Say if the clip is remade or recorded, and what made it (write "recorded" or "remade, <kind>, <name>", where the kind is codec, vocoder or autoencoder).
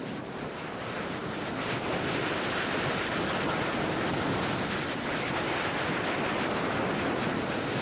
recorded